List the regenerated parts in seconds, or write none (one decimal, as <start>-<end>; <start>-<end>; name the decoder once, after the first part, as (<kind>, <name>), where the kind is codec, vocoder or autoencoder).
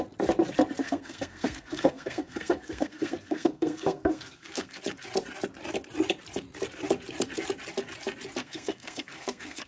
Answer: 0.8-4.8 (codec, SNAC); 8.4-9.7